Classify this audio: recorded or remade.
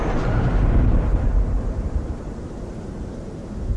remade